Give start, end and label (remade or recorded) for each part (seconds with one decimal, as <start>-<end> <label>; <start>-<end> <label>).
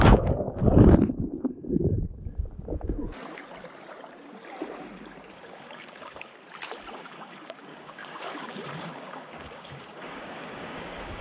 0.0-0.6 remade; 0.6-5.3 recorded; 5.3-6.3 remade; 6.3-6.9 recorded; 6.9-11.2 remade